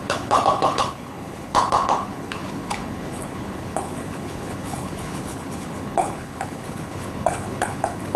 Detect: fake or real fake